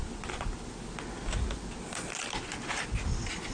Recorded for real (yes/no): yes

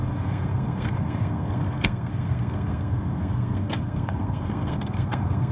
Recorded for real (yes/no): no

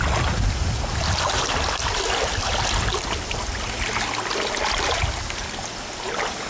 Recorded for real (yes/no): yes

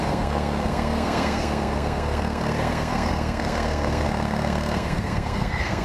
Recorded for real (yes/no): no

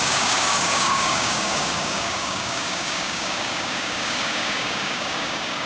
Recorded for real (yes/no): no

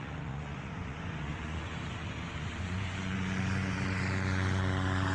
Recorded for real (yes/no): no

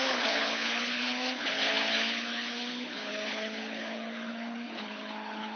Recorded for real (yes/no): no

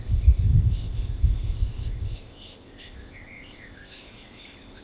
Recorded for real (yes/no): no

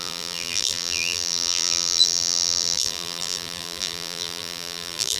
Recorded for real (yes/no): no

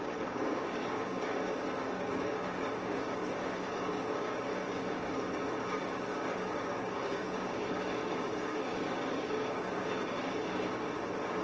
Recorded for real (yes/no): no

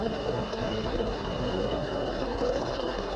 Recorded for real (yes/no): no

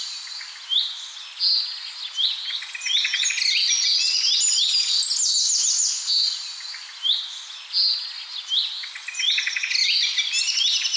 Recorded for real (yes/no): yes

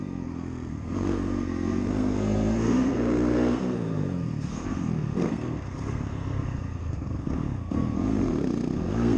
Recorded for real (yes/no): no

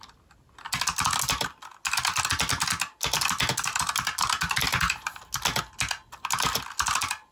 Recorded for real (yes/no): yes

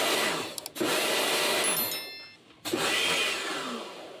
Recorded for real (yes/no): yes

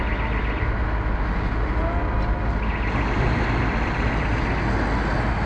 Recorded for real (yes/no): yes